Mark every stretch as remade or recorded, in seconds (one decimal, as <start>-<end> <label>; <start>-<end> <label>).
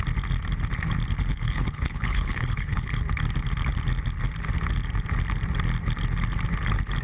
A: 0.0-1.3 recorded; 1.3-3.0 remade; 3.0-7.0 recorded